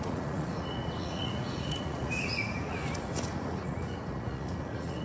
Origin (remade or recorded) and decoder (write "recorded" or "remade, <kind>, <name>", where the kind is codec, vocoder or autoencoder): remade, vocoder, Vocos